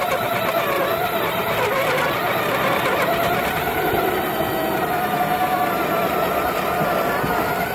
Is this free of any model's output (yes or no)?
yes